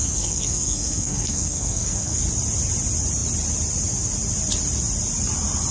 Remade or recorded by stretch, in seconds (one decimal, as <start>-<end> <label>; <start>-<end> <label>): 0.0-2.2 remade; 2.2-5.7 recorded